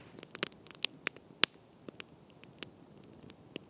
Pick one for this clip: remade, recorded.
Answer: recorded